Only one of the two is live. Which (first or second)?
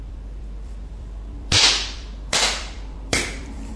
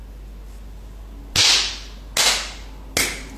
second